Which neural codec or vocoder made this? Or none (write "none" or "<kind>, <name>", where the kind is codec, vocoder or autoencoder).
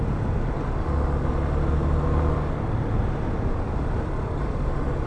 none